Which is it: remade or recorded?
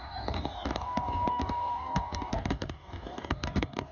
remade